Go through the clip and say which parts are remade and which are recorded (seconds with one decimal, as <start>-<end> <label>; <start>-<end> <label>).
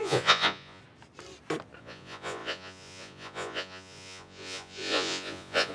0.0-0.8 remade; 0.8-1.8 recorded; 1.8-5.7 remade